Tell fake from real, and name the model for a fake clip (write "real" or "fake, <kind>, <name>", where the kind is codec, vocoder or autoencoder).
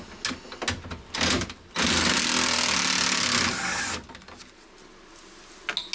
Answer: real